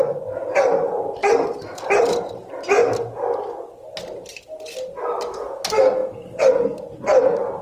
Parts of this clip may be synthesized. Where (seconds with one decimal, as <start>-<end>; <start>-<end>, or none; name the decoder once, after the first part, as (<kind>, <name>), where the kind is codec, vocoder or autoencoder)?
1.2-2.1 (vocoder, BigVGAN v2)